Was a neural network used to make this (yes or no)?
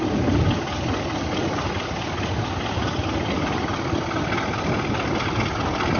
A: no